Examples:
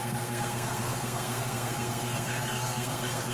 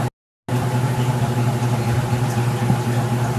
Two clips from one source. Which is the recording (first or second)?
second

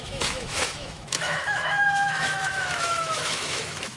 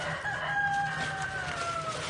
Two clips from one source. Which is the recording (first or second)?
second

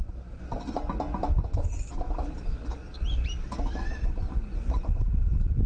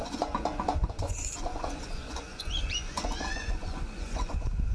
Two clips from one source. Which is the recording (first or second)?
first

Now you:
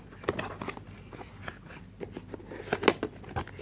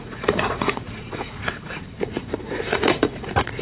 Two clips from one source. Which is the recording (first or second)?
first